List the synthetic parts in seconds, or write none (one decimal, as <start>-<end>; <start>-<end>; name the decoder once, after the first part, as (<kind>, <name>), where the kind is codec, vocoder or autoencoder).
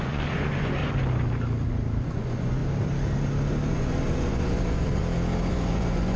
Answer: 0.0-0.8 (vocoder, Vocos); 2.0-2.6; 3.7-5.0; 5.5-6.2